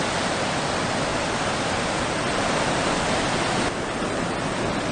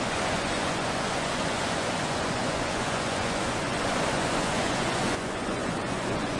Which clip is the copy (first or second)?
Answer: second